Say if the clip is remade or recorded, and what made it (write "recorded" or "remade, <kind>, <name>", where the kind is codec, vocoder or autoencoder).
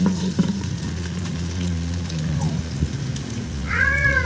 remade, vocoder, Vocos